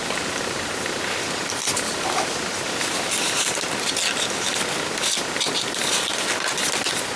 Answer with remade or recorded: recorded